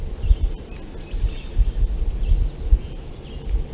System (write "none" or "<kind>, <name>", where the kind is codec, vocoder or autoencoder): none